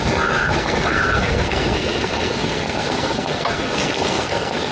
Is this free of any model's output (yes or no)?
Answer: no